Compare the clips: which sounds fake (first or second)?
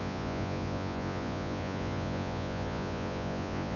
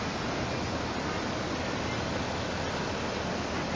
first